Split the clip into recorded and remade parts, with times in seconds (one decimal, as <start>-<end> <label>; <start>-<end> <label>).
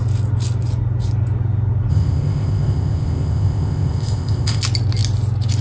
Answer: 0.0-1.9 recorded; 1.9-4.6 remade; 4.6-5.6 recorded